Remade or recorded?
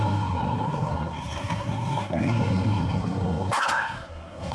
remade